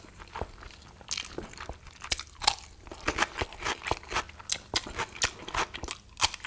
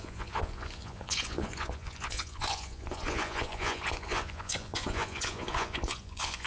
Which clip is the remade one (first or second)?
second